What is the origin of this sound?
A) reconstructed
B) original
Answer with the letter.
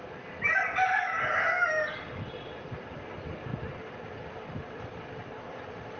B